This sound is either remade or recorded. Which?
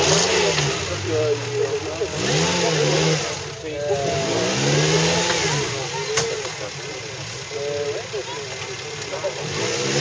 recorded